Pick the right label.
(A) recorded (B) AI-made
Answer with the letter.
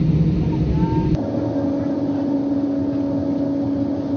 A